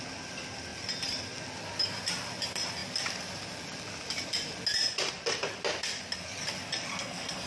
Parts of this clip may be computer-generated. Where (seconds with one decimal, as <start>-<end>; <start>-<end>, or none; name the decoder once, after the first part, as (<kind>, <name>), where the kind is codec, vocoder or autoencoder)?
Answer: 6.9-7.5 (codec, SNAC)